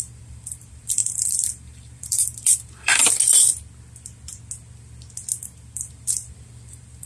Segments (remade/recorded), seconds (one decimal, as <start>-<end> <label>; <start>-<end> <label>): 0.0-3.0 remade; 3.0-5.9 recorded; 5.9-7.1 remade